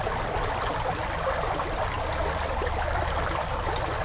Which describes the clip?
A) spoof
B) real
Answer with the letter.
B